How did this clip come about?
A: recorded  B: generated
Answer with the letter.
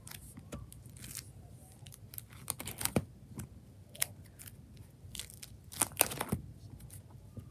A